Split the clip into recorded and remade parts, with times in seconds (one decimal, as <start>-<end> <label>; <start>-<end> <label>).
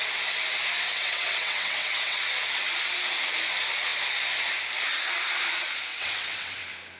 0.0-0.9 recorded; 0.9-2.2 remade; 2.2-5.9 recorded; 5.9-6.6 remade; 6.6-7.0 recorded